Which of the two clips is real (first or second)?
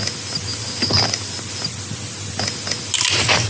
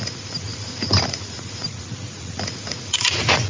first